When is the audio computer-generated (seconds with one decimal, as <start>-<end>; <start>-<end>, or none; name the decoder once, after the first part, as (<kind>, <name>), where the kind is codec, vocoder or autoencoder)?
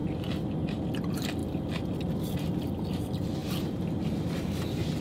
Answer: 0.7-1.4 (vocoder, BigVGAN v2); 3.0-3.4